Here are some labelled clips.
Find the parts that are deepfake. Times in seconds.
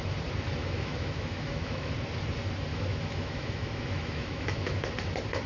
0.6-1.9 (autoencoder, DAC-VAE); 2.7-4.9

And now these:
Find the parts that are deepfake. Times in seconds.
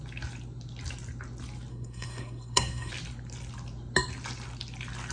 1.7-2.9 (codec, SNAC)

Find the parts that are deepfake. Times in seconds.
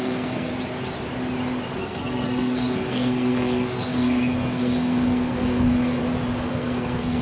0.0-0.5 (codec, SNAC); 1.8-6.0; 6.5-7.2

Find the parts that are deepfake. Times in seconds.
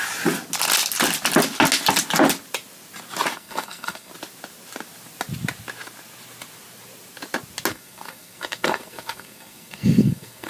3.3-4.1 (codec, SNAC); 7.7-10.5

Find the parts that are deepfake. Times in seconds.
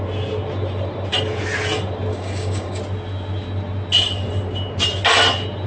2.1-2.8 (codec, DAC)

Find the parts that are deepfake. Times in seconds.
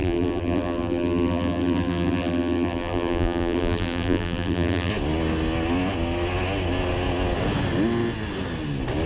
0.0-4.9 (vocoder, BigVGAN v2)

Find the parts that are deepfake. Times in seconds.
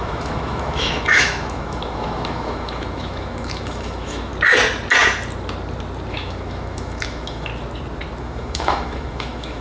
0.0-4.3 (autoencoder, DAC-VAE); 6.1-7.5; 8.2-9.6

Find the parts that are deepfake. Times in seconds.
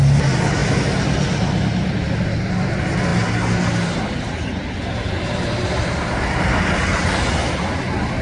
none